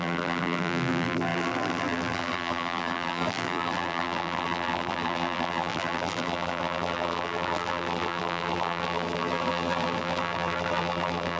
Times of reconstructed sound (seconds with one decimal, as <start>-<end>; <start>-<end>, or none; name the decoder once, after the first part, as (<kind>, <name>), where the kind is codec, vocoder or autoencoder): 0.0-11.4 (vocoder, BigVGAN v2)